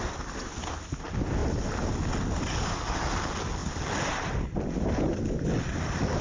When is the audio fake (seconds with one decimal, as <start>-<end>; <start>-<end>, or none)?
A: none